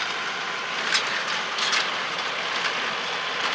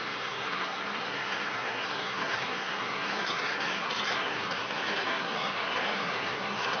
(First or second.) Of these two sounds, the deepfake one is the second